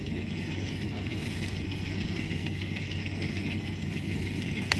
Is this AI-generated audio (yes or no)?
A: yes